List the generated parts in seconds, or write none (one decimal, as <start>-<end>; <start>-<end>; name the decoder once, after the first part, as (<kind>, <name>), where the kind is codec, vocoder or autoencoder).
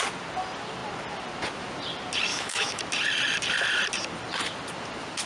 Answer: 2.3-2.8 (autoencoder, DAC-VAE)